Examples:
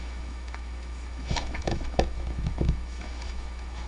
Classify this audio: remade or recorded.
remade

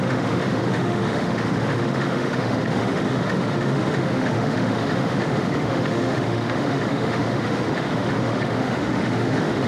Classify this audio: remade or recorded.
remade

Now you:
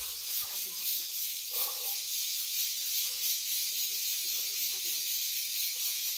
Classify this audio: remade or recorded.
remade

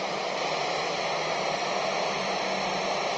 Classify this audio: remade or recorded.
recorded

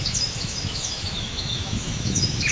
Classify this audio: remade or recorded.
remade